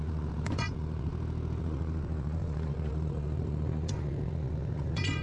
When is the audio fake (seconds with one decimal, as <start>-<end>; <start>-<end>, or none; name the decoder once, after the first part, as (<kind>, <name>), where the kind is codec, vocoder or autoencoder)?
0.0-1.1 (vocoder, Vocos); 1.6-5.2